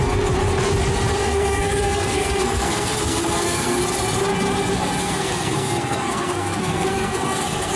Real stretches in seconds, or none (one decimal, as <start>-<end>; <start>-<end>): 0.0-1.2; 3.8-5.0